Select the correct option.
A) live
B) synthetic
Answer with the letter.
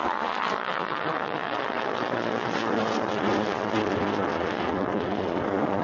B